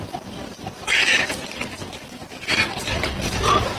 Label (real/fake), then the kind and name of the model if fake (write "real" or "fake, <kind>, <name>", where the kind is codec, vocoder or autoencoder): real